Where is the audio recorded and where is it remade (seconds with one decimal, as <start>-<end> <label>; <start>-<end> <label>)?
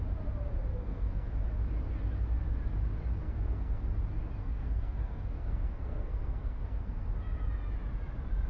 0.0-0.7 recorded; 0.7-1.3 remade; 1.3-3.2 recorded; 3.2-3.9 remade; 3.9-4.4 recorded; 4.4-7.1 remade; 7.1-8.5 recorded